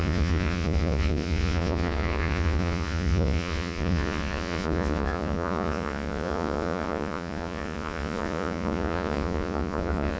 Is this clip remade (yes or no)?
yes